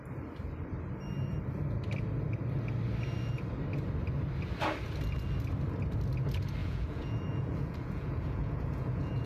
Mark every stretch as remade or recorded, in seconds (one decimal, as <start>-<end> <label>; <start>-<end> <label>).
0.0-6.6 recorded; 6.6-9.3 remade